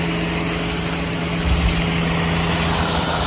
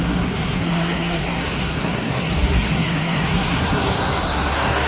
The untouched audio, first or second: first